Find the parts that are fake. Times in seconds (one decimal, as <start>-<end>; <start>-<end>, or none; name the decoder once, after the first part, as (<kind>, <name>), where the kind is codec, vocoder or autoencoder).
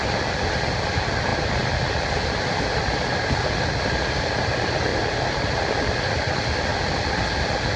4.9-5.5 (vocoder, BigVGAN v2)